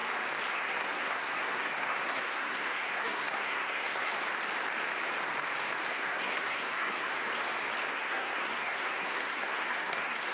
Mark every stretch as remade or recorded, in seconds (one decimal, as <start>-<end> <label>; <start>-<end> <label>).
0.0-0.5 recorded; 0.5-4.1 remade; 4.1-5.9 recorded; 5.9-7.1 remade; 7.1-7.9 recorded; 7.9-10.3 remade